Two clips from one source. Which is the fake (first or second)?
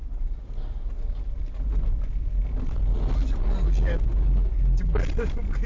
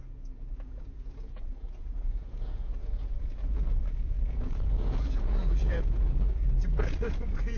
second